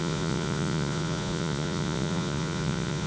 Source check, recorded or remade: remade